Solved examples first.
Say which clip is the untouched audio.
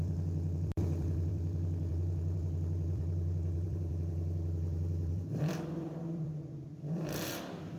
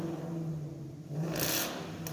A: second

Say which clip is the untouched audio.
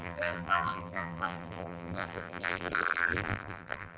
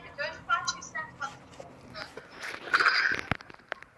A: second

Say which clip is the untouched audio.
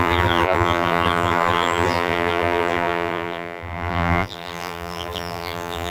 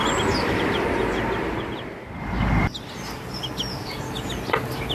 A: second